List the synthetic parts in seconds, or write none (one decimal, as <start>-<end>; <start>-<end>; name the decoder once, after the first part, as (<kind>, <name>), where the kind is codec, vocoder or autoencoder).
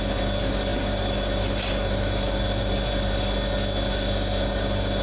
none